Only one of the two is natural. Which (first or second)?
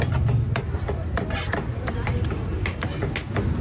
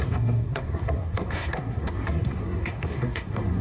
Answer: first